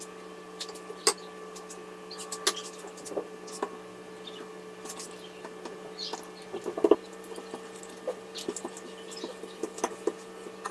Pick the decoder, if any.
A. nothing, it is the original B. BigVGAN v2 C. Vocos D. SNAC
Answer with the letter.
A